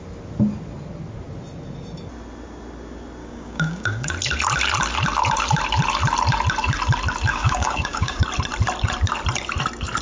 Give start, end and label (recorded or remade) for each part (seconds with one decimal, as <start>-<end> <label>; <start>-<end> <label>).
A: 0.0-3.2 recorded; 3.2-4.1 remade; 4.1-7.3 recorded; 7.3-8.2 remade; 8.2-10.0 recorded